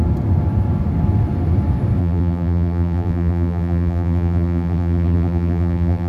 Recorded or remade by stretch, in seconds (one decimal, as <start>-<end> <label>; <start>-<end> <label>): 0.0-2.0 recorded; 2.0-6.1 remade